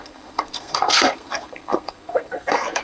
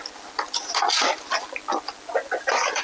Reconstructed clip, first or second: first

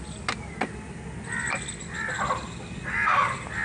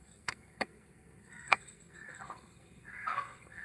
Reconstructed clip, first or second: second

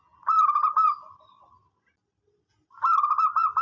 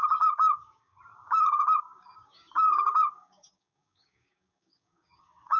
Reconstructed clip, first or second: second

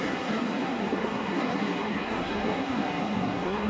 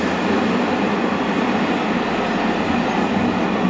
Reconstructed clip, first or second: first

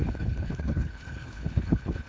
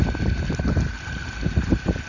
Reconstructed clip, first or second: first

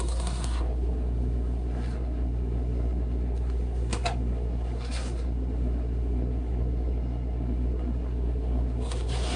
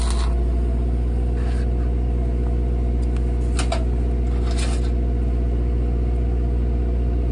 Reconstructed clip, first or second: first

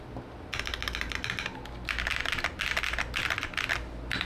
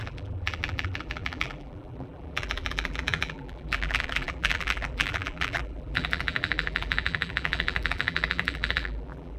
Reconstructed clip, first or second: second